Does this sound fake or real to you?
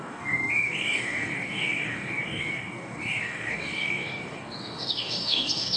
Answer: fake